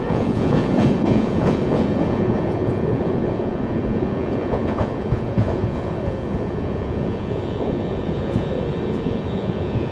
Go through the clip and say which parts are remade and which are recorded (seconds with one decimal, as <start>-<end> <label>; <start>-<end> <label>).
0.0-9.9 remade